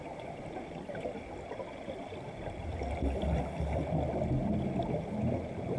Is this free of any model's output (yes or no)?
yes